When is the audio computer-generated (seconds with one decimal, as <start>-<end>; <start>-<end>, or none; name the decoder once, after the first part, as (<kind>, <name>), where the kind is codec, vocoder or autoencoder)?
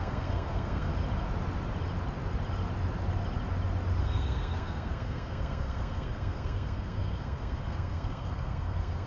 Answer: 0.0-0.9 (codec, SNAC); 4.0-9.1